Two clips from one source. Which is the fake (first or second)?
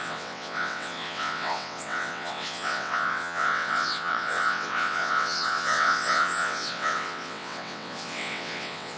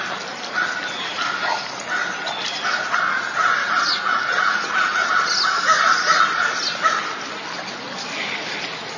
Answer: first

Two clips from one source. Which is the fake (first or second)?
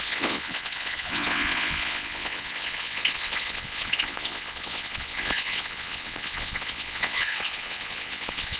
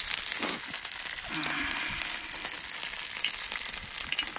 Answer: first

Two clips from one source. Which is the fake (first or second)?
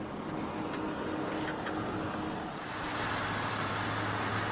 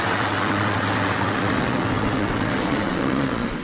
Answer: second